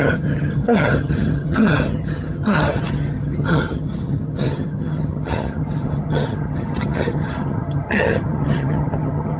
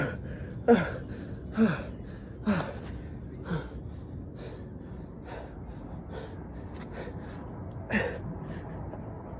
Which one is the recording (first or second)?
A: second